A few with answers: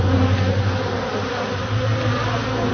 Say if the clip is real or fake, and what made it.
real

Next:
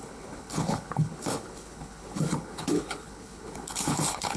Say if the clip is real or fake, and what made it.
fake, codec, HILCodec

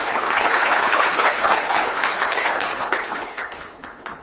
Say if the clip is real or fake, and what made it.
fake, codec, HILCodec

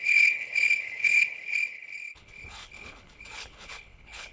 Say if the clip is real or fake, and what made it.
fake, codec, HILCodec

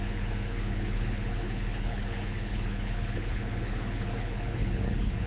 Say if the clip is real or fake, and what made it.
fake, codec, HILCodec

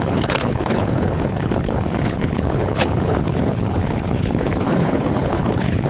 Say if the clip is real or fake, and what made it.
fake, codec, HILCodec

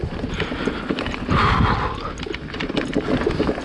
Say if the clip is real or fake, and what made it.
real